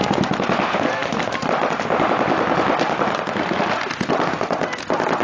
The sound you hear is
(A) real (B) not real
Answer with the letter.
A